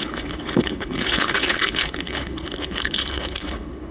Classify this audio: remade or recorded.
remade